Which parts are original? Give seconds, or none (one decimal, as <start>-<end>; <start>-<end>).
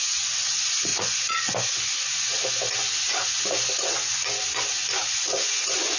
none